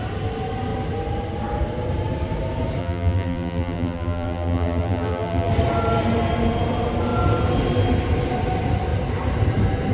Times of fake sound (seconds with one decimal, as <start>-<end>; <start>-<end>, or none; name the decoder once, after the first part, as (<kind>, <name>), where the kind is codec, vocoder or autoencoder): 2.8-5.5 (vocoder, BigVGAN v2)